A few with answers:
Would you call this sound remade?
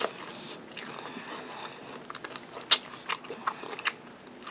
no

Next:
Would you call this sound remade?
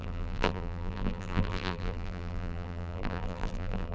yes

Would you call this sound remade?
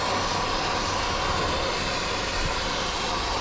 yes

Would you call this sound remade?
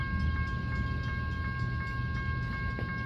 no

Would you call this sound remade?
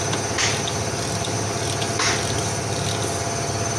no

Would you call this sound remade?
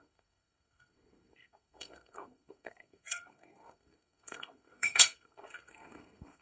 yes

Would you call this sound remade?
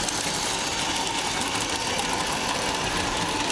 no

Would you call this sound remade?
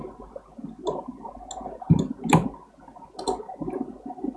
no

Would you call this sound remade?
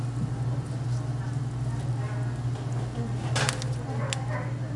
no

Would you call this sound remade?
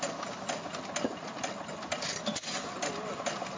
no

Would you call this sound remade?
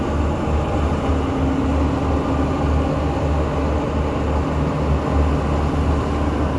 no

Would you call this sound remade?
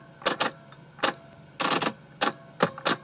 no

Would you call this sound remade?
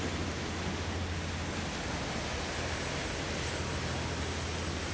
no